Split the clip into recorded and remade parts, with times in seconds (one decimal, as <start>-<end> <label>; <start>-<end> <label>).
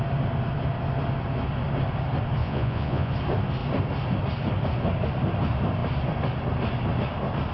0.0-2.4 recorded; 2.4-3.1 remade; 3.1-7.5 recorded